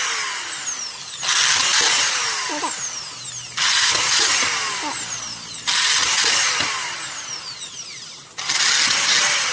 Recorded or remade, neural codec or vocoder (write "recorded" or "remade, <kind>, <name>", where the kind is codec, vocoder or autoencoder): recorded